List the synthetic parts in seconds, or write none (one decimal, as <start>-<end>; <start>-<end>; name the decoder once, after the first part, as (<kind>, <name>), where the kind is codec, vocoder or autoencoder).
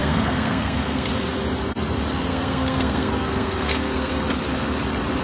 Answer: 0.0-1.1 (codec, SNAC); 2.3-4.1